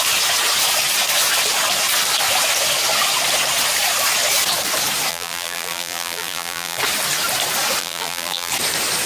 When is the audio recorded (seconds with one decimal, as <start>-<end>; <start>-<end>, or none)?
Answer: 0.0-5.1; 6.8-7.8; 8.5-9.1